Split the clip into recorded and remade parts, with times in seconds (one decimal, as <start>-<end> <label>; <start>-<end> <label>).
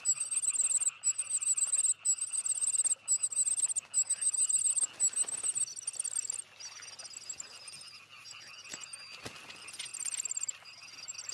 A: 0.0-9.9 recorded; 9.9-11.3 remade